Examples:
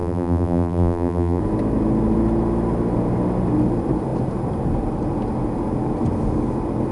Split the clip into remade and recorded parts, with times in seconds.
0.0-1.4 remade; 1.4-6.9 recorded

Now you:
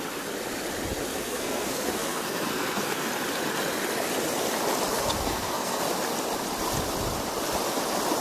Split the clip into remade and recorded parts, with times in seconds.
0.0-1.1 recorded; 1.1-3.1 remade; 3.1-4.9 recorded; 4.9-5.8 remade; 5.8-8.2 recorded

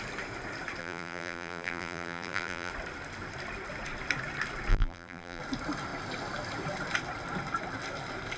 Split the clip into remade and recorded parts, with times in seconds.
0.0-0.8 recorded; 0.8-2.7 remade; 2.7-4.7 recorded; 4.7-5.4 remade; 5.4-8.4 recorded